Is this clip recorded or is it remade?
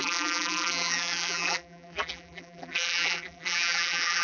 remade